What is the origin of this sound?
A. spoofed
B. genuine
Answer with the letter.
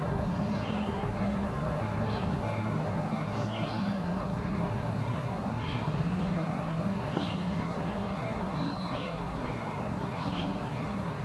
A